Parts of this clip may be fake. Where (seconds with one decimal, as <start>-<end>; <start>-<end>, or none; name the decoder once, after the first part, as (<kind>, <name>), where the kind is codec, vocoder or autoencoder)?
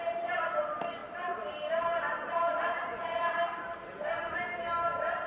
3.0-4.0 (vocoder, BigVGAN v2)